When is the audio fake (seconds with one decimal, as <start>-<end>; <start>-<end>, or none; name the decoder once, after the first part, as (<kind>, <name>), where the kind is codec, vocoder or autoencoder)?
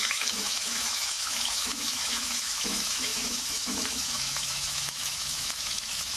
0.0-6.2 (autoencoder, DAC-VAE)